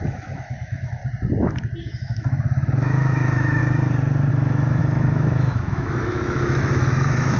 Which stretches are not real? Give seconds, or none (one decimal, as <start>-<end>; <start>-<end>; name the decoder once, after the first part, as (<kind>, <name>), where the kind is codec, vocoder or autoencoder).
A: 0.0-1.0 (autoencoder, DAC-VAE); 1.8-3.6; 4.3-7.4